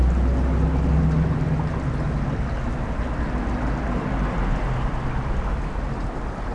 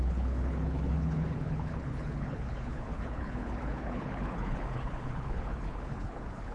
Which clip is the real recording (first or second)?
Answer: first